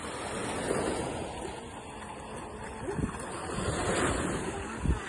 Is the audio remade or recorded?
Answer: recorded